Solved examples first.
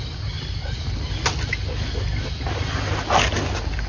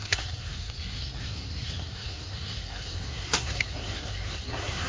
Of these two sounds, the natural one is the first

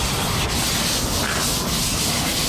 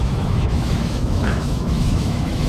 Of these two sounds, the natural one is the first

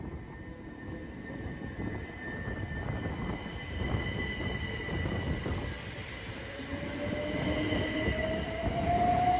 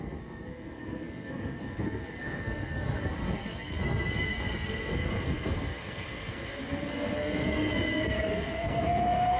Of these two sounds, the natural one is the first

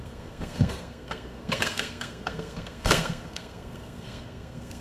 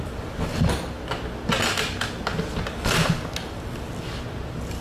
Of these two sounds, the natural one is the second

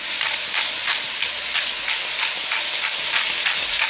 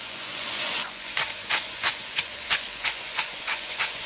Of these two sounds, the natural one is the first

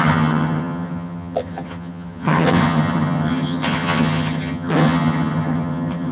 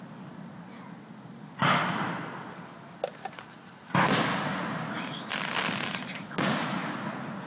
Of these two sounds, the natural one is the second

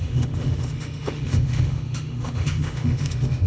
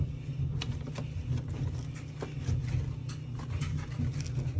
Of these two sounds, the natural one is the second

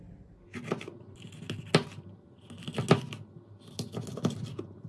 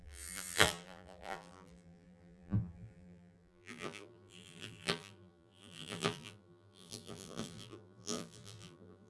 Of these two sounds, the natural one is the first